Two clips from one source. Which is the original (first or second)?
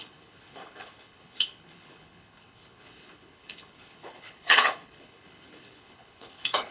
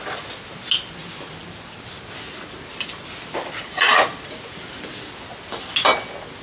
second